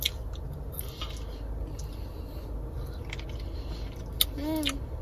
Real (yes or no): yes